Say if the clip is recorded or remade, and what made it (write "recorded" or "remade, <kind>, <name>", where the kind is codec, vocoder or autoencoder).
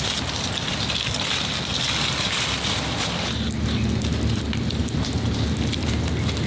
recorded